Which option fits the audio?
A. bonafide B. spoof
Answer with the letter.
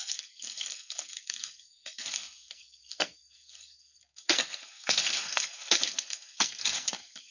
B